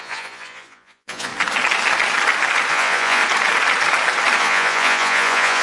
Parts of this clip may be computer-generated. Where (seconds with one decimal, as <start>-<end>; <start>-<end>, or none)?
0.0-1.3; 2.7-3.2; 4.4-5.6